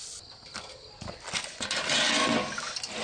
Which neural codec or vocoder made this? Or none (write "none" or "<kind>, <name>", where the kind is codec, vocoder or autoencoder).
none